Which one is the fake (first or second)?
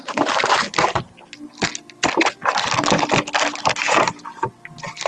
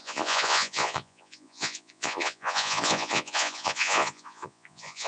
second